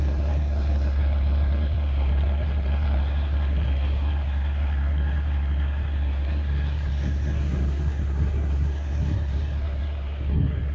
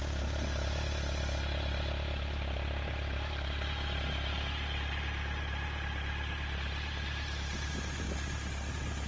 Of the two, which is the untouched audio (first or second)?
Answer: second